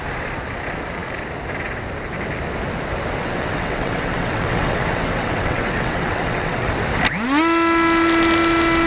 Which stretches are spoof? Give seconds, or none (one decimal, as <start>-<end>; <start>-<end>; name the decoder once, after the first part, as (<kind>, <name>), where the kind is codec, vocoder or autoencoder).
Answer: 3.2-6.7 (vocoder, WaveNeXt)